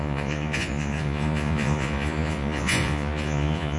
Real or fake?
fake